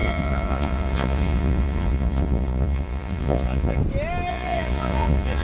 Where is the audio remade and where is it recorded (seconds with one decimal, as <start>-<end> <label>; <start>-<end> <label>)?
0.0-3.8 remade; 3.8-4.3 recorded; 4.3-5.4 remade